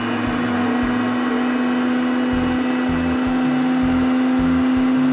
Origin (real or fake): real